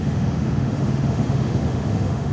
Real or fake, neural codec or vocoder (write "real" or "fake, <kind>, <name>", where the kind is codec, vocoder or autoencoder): fake, autoencoder, DAC-VAE